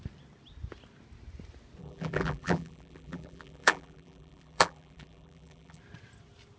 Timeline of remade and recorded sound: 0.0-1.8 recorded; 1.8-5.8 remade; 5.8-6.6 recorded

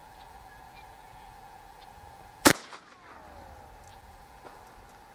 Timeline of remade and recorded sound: 0.0-2.5 remade; 2.5-3.9 recorded; 3.9-4.6 remade; 4.6-5.1 recorded